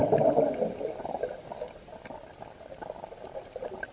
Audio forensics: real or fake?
real